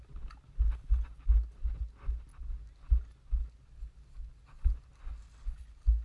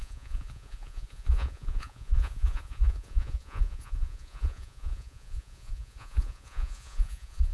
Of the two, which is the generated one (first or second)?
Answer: second